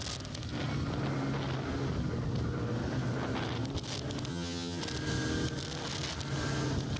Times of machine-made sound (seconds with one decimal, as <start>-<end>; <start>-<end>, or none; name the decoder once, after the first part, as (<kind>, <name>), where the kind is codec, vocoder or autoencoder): 4.3-4.8 (vocoder, HiFi-GAN)